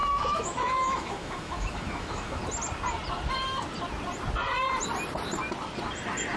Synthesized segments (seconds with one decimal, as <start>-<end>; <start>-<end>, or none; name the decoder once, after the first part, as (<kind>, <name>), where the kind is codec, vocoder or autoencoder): 0.0-2.4 (autoencoder, DAC-VAE)